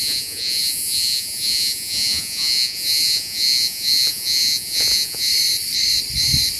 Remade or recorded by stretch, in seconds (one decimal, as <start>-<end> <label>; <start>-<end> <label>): 0.0-5.3 remade; 5.3-6.6 recorded